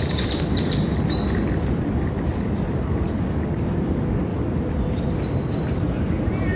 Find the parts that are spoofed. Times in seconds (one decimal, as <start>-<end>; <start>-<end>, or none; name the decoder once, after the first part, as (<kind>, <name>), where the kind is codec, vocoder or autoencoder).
0.9-2.6 (vocoder, BigVGAN v2); 4.3-6.6